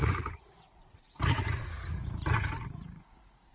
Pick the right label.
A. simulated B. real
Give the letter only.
A